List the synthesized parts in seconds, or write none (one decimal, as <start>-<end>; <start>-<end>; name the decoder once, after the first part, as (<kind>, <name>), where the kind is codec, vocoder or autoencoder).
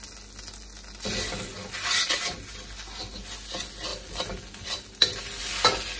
none